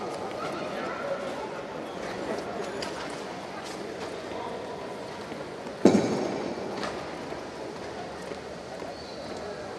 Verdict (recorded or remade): remade